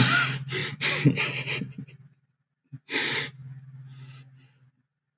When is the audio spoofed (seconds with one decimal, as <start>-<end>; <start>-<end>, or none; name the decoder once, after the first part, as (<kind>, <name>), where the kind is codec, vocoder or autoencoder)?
none